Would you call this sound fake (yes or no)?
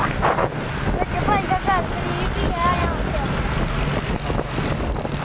no